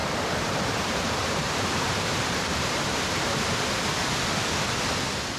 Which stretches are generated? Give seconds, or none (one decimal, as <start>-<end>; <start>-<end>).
0.0-3.2